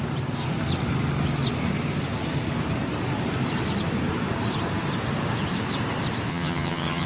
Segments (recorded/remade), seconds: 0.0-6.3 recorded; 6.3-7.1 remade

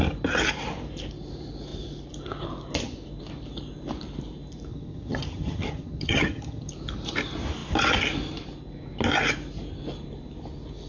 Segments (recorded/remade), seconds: 0.0-4.7 recorded; 4.7-6.7 remade; 6.7-10.9 recorded

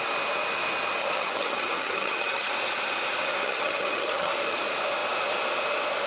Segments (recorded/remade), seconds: 0.0-1.0 recorded; 1.0-2.5 remade; 2.5-3.4 recorded; 3.4-4.3 remade; 4.3-6.1 recorded

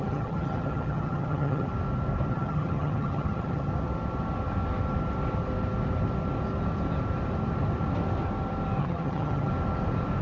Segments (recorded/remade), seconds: 0.0-1.7 remade; 1.7-2.3 recorded; 2.3-3.7 remade; 3.7-8.8 recorded; 8.8-9.5 remade; 9.5-10.2 recorded

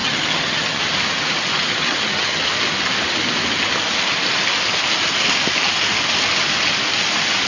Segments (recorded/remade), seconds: 0.0-0.8 remade; 0.8-1.7 recorded; 1.7-2.4 remade; 2.4-7.5 recorded

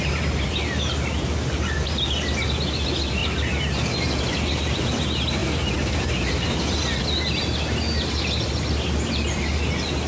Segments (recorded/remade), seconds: 0.0-10.1 recorded

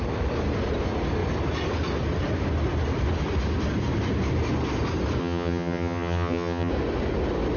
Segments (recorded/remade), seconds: 0.0-5.2 recorded; 5.2-6.7 remade; 6.7-7.6 recorded

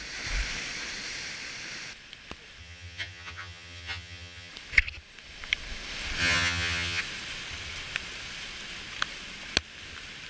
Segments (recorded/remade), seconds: 0.0-2.6 recorded; 2.6-4.5 remade; 4.5-6.2 recorded; 6.2-7.0 remade; 7.0-10.3 recorded